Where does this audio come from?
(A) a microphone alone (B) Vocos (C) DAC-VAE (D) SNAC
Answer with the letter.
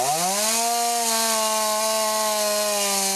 A